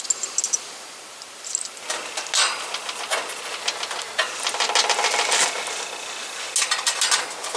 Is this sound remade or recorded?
recorded